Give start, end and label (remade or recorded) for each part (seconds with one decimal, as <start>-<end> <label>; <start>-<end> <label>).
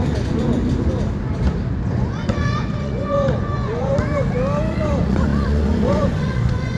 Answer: 0.0-0.6 remade; 0.6-1.9 recorded; 1.9-3.9 remade; 3.9-4.7 recorded; 4.7-6.8 remade